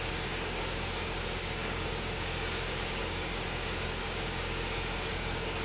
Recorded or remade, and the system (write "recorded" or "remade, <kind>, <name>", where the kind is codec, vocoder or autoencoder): remade, codec, DAC